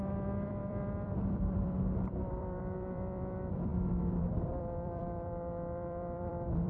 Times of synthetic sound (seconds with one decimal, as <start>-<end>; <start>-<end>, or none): 0.0-6.7